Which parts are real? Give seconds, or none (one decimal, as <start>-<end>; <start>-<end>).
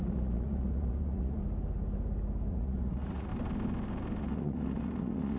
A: 1.4-2.5; 3.3-4.2